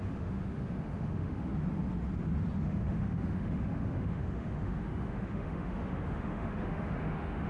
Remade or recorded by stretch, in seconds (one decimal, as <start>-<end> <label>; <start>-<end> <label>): 0.0-1.5 remade; 1.5-2.6 recorded; 2.6-7.5 remade